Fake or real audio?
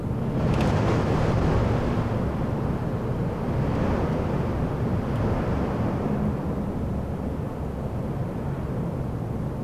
real